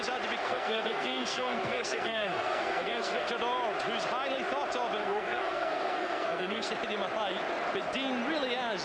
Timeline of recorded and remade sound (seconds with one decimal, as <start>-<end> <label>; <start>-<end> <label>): 0.0-0.4 recorded; 0.4-3.3 remade; 3.3-5.0 recorded; 5.0-6.7 remade; 6.7-8.8 recorded